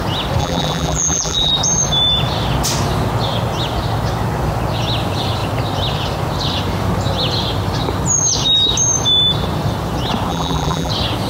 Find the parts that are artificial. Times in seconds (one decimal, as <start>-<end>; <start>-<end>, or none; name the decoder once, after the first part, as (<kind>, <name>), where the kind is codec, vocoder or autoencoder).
0.4-1.5 (vocoder, BigVGAN v2); 10.3-10.9